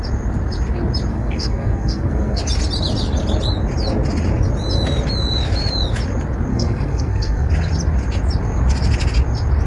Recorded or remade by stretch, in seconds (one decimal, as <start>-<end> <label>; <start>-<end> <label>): 0.0-1.1 recorded; 1.1-2.4 remade; 2.4-6.5 recorded; 6.5-7.5 remade; 7.5-9.7 recorded